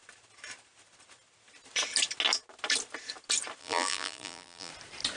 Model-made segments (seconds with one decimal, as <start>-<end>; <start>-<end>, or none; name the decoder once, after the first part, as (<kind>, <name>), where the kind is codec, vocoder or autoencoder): 3.6-4.7 (vocoder, BigVGAN v2)